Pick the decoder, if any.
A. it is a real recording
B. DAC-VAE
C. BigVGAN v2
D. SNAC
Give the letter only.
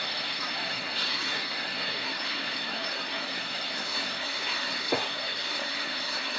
D